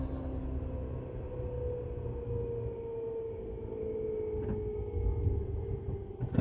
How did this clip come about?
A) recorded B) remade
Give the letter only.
A